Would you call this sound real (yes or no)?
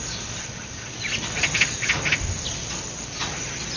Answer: yes